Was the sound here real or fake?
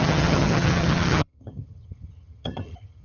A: fake